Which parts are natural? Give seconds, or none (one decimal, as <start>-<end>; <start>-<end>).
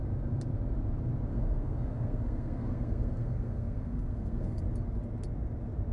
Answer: 0.0-1.3; 4.6-5.9